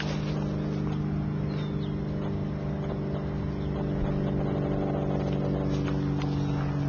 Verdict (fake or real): real